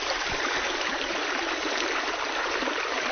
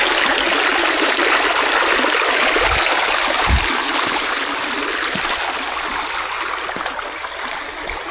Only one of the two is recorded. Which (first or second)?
second